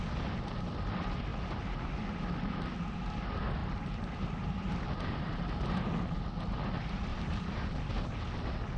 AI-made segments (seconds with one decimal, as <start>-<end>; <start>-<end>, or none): 3.6-4.7; 7.1-7.8